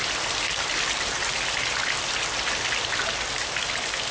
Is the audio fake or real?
real